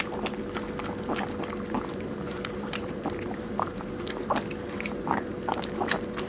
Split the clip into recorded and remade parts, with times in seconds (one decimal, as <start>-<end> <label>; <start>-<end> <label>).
0.0-1.9 recorded; 1.9-4.2 remade; 4.2-6.3 recorded